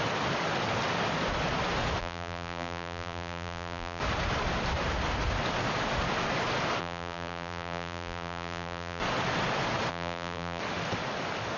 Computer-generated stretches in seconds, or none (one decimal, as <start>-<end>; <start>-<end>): 2.0-4.0; 6.8-9.0; 9.9-10.6